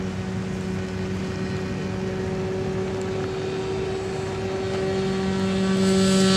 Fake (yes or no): no